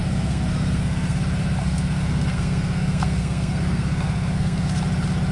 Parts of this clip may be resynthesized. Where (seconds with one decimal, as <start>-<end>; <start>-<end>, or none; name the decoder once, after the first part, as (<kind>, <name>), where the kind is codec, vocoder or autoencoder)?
0.0-1.2 (codec, SNAC); 1.6-4.8